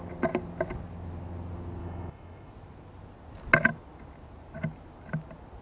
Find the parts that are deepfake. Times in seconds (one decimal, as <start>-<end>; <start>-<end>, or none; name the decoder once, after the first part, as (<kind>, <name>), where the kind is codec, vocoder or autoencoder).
1.8-2.5 (autoencoder, DAC-VAE)